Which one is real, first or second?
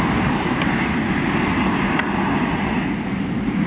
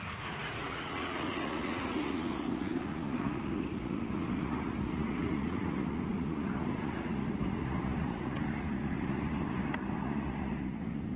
first